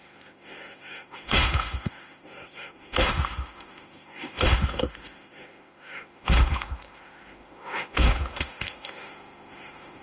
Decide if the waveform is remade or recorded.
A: remade